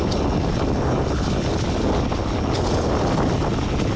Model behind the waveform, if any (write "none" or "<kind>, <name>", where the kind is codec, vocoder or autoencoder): none